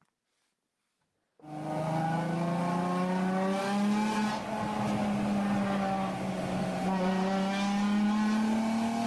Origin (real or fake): real